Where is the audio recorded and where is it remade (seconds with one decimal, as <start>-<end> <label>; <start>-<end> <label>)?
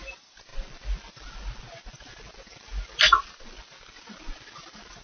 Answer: 0.0-5.0 recorded